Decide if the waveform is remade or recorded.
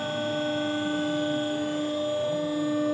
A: recorded